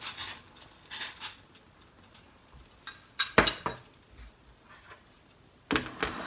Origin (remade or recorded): recorded